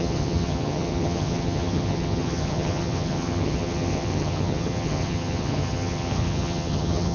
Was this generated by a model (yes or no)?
yes